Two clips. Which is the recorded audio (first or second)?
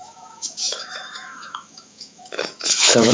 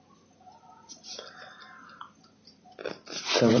second